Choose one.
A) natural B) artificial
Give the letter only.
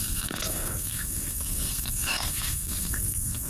B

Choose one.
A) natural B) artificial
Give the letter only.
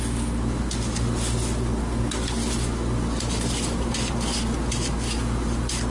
A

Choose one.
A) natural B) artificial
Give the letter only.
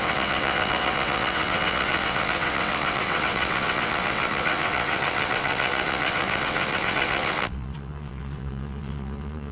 B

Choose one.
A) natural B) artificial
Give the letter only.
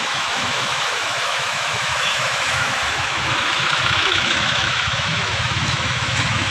B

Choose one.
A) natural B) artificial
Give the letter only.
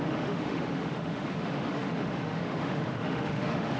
B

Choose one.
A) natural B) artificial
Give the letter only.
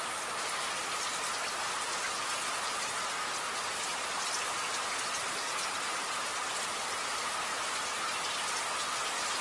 A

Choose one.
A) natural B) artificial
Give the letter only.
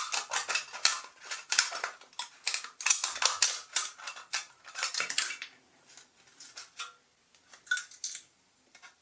A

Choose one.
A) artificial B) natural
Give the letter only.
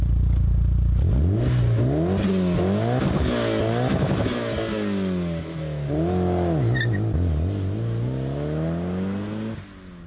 B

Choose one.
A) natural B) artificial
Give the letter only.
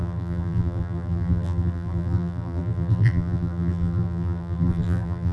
B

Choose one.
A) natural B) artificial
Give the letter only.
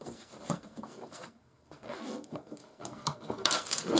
B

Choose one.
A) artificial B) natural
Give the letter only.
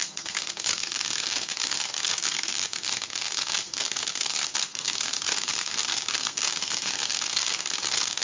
A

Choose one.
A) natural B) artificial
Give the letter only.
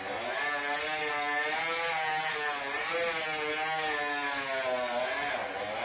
A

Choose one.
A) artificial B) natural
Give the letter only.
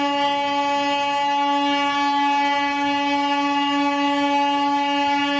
B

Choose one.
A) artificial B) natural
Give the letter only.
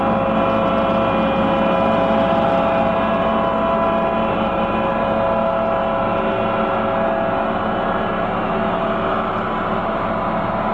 B